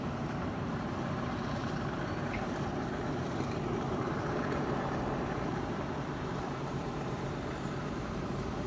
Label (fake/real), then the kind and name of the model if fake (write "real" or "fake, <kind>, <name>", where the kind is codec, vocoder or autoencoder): fake, vocoder, BigVGAN v2